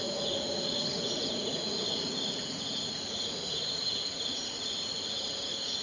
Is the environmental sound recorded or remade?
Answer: remade